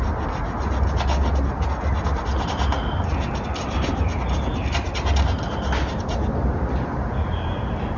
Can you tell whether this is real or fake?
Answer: real